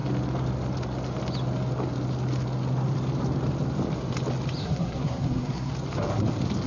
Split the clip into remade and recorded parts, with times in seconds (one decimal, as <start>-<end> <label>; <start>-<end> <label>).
0.0-4.6 recorded; 4.6-5.7 remade; 5.7-6.7 recorded